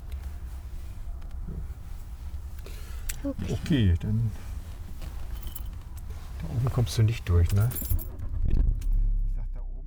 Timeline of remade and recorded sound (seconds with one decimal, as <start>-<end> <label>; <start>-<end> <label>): 0.0-1.0 recorded; 1.0-3.4 remade; 3.4-9.9 recorded